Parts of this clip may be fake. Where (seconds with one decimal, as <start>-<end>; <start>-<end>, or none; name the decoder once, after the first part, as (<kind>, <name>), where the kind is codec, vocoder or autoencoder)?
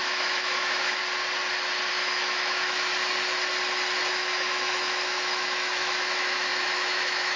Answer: 0.0-1.0 (autoencoder, DAC-VAE); 1.9-2.9; 4.1-7.4